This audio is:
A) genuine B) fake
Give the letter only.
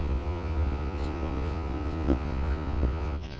B